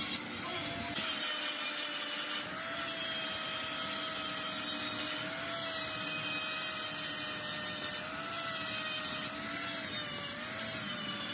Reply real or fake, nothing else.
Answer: real